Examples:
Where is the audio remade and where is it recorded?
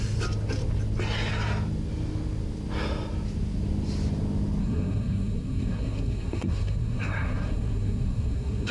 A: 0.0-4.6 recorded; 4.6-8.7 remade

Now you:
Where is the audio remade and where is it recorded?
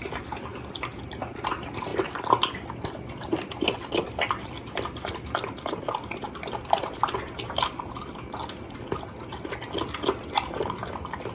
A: 0.0-11.3 recorded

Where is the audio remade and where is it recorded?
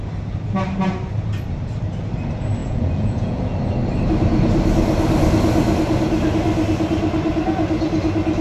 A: 0.0-2.6 recorded; 2.6-3.6 remade; 3.6-8.4 recorded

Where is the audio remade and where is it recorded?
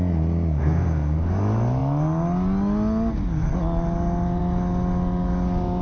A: 0.0-0.6 recorded; 0.6-1.3 remade; 1.3-5.8 recorded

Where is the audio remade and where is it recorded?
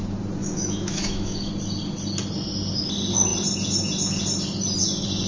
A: 0.0-0.4 recorded; 0.4-1.5 remade; 1.5-5.3 recorded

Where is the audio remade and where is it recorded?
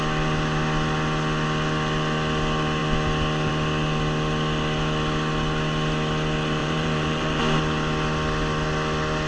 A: 0.0-6.6 recorded; 6.6-7.4 remade; 7.4-9.3 recorded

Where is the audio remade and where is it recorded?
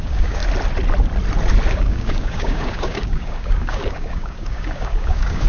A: 0.0-0.4 remade; 0.4-1.7 recorded; 1.7-5.5 remade